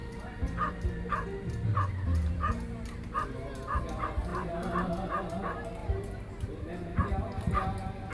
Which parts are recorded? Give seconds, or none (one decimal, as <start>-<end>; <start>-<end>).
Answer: 1.5-4.3; 4.9-5.8; 6.7-8.1